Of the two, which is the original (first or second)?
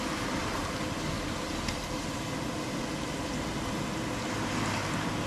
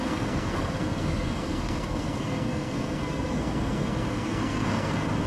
first